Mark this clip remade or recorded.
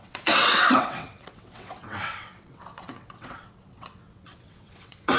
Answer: remade